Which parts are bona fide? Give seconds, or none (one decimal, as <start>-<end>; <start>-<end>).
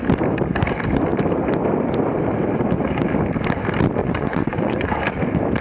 0.0-4.0; 4.9-5.6